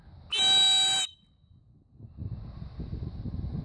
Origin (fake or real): real